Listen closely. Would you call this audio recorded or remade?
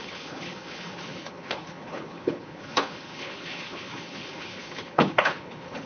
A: remade